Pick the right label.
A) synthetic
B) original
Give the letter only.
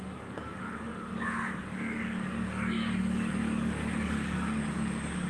A